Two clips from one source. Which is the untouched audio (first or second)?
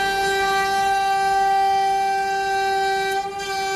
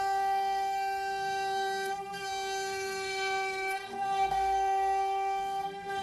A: first